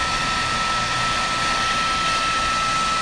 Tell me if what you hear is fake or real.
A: real